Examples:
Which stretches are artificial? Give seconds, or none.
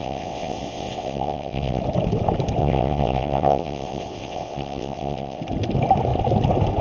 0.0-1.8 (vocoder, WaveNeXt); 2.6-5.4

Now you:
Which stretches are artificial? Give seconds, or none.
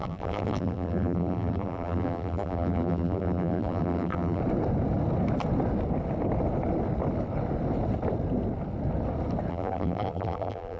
0.0-4.4 (vocoder, BigVGAN v2); 9.5-10.8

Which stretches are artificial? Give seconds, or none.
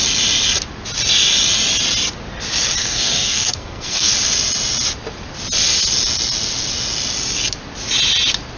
2.8-4.1 (codec, SNAC)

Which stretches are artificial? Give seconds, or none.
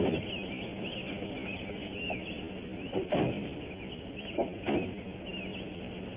none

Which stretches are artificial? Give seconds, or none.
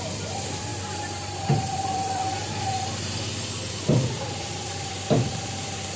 0.0-0.7 (vocoder, BigVGAN v2); 1.3-2.2; 3.7-6.0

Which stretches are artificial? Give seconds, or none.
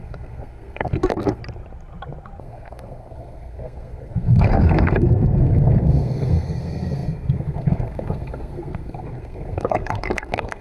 0.0-1.4 (codec, SNAC); 2.4-10.6